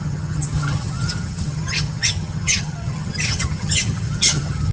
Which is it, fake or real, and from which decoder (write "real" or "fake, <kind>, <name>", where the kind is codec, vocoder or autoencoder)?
fake, vocoder, HiFi-GAN